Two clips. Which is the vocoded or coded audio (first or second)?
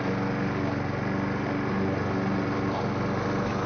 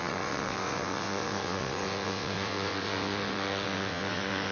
second